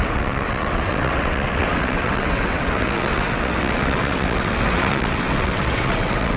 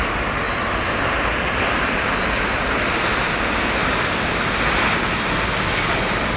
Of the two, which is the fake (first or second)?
first